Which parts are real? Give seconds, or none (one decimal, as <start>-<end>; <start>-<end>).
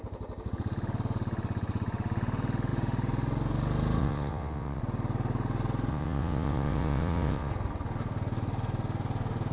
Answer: 0.0-4.0; 4.8-5.9; 7.5-9.5